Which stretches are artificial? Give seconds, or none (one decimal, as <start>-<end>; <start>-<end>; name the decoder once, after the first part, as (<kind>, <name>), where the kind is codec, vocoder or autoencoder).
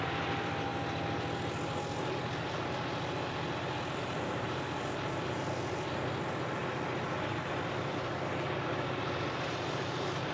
0.0-0.7 (vocoder, BigVGAN v2); 3.8-10.3